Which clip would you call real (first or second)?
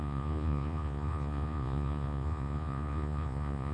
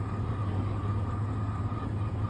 second